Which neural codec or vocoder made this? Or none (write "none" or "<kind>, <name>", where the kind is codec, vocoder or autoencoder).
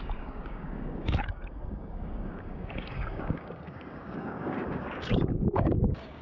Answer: codec, DAC